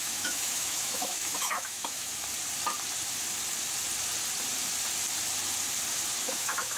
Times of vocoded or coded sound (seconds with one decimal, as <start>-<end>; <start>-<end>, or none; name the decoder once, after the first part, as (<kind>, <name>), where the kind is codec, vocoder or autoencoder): 0.0-2.1 (autoencoder, DAC-VAE); 6.2-6.8